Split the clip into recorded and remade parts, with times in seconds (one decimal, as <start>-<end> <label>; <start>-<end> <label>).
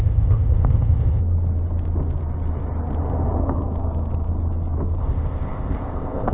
0.0-1.2 remade; 1.2-5.0 recorded; 5.0-6.3 remade